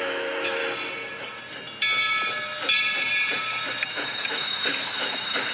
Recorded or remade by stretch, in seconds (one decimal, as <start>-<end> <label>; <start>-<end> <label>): 0.0-0.6 remade; 0.6-3.9 recorded; 3.9-5.5 remade